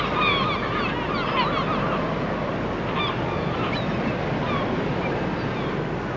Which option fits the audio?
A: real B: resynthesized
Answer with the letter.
A